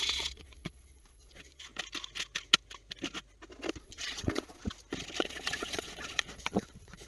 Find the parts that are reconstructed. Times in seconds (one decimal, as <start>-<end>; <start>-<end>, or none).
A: 0.0-1.7; 3.8-4.6; 5.2-7.1